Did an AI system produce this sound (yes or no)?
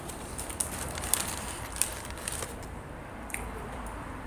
yes